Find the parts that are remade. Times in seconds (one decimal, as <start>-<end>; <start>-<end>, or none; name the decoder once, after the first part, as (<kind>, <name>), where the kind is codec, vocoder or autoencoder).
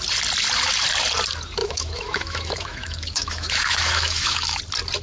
1.6-4.6 (autoencoder, DAC-VAE)